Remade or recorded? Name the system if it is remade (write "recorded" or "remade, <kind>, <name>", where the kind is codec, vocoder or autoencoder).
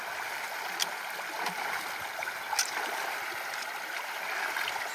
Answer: recorded